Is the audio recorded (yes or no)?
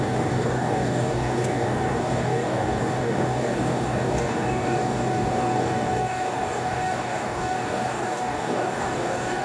no